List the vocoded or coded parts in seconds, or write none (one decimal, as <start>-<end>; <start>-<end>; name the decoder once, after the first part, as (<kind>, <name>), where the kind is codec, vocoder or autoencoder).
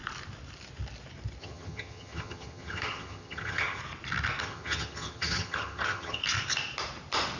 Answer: 1.4-3.8 (vocoder, HiFi-GAN); 4.4-6.2